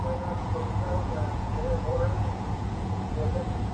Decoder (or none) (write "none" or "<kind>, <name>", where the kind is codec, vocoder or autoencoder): vocoder, Vocos